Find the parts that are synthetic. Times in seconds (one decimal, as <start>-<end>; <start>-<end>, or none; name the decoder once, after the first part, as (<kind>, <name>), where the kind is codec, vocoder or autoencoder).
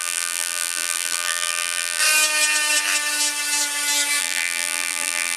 0.0-2.0 (vocoder, BigVGAN v2); 4.2-5.4